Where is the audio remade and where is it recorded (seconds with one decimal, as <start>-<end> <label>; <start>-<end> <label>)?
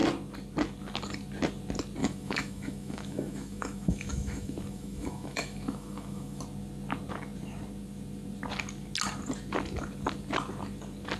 0.0-2.0 recorded; 2.0-6.4 remade; 6.4-11.2 recorded